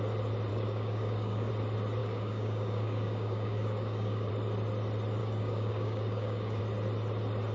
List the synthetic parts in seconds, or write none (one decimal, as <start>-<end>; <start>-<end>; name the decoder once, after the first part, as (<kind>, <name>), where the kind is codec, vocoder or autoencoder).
0.5-1.5 (codec, DAC); 2.0-4.3; 5.2-6.6